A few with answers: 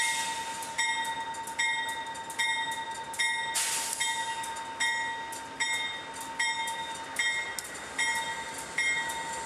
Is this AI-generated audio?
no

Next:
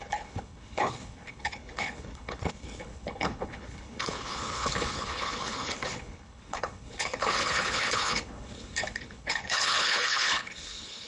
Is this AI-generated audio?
yes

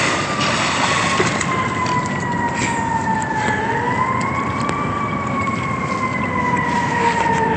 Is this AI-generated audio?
no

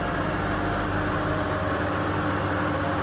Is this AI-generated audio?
no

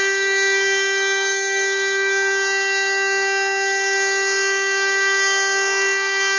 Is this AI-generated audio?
yes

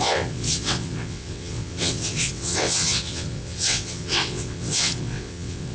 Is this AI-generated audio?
yes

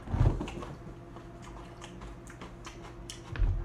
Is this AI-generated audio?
no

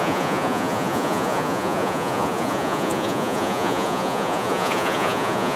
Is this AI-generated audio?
yes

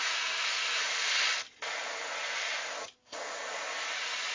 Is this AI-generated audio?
no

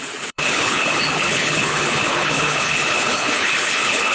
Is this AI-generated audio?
yes